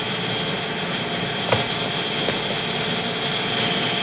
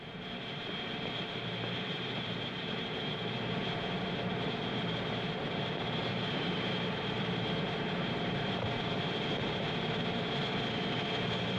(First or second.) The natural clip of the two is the first